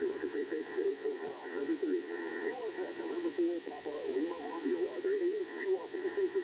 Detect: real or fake fake